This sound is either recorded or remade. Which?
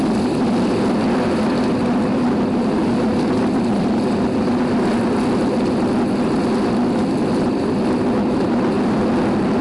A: recorded